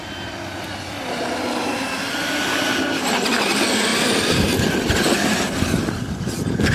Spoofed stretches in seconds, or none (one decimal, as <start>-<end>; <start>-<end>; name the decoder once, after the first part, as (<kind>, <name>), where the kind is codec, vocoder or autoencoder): none

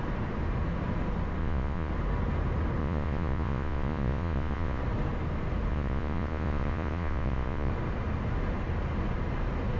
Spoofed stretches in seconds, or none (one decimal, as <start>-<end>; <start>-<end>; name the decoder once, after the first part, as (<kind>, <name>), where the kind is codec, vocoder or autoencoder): 1.4-1.9 (vocoder, Vocos); 2.8-4.8; 5.7-7.7

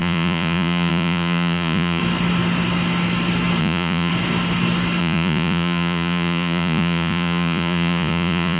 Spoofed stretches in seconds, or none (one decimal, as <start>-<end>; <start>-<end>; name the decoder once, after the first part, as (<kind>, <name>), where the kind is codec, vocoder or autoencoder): 0.0-2.0 (vocoder, Vocos); 3.6-4.1; 5.0-8.6